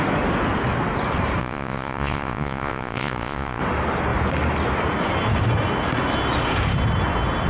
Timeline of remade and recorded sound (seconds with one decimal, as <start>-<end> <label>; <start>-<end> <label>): 0.0-1.4 recorded; 1.4-3.6 remade; 3.6-7.5 recorded